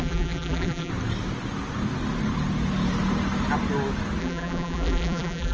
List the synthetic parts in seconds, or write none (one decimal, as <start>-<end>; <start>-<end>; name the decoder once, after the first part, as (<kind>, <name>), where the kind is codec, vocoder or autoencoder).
0.0-0.9 (vocoder, BigVGAN v2); 4.2-5.5